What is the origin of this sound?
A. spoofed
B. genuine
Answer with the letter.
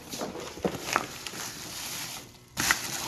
A